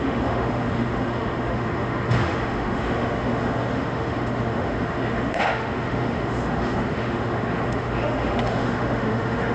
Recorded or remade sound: remade